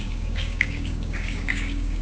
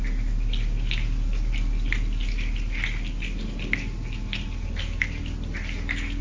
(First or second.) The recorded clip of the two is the second